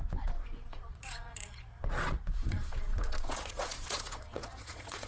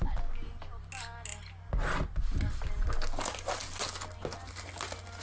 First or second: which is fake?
first